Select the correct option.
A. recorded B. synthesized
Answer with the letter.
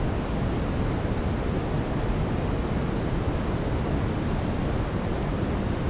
A